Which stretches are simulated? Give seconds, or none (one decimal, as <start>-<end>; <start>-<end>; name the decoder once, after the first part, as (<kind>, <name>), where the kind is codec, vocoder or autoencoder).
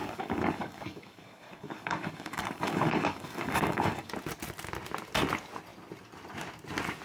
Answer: 0.0-4.1 (codec, DAC)